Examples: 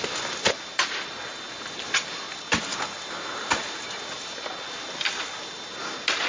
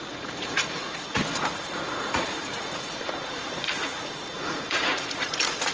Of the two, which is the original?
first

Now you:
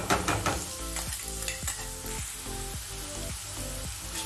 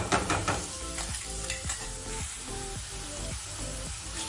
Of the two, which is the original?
first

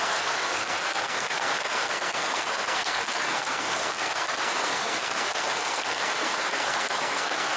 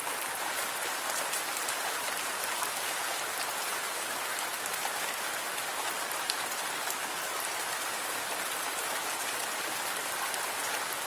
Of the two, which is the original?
second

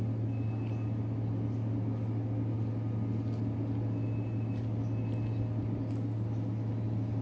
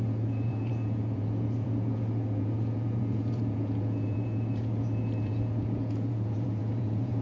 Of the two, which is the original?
first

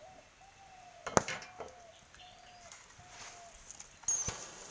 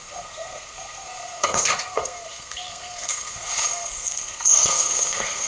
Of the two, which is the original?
first